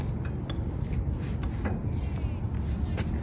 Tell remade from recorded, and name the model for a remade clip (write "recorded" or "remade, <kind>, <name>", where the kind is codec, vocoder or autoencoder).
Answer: recorded